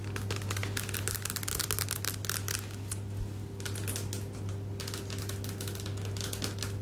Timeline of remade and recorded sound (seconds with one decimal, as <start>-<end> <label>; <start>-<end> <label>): 0.0-6.8 recorded